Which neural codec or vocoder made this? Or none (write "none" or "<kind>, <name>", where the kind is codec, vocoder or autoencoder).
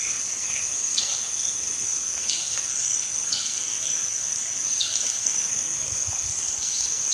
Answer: codec, SNAC